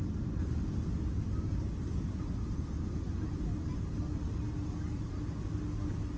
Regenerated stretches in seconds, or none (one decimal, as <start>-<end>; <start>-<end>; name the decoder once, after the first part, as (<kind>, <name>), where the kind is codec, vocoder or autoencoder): none